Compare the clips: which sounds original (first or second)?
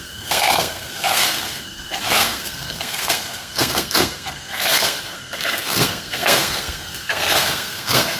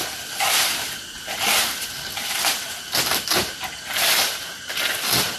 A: second